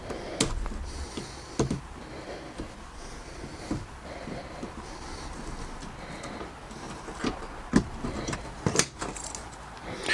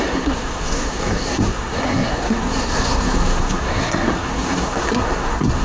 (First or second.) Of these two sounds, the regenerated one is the second